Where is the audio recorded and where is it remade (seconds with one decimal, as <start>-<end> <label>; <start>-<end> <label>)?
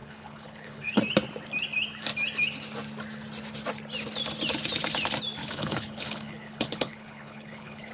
0.0-1.0 remade; 1.0-5.4 recorded; 5.4-7.9 remade